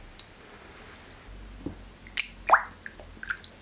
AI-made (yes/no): no